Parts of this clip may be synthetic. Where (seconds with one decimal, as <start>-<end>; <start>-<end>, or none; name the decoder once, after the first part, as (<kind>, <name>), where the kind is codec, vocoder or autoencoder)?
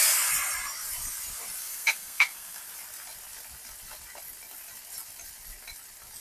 1.6-2.6 (codec, SNAC)